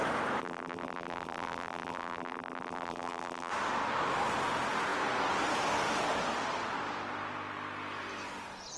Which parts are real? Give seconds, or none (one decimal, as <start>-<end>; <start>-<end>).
0.0-0.4; 3.5-8.8